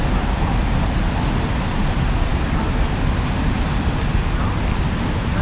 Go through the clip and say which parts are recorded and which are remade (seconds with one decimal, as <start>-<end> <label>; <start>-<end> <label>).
0.0-5.4 recorded